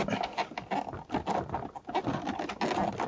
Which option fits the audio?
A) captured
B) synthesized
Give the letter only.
A